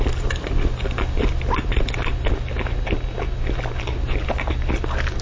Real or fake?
real